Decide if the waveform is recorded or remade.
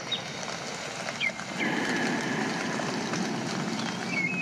recorded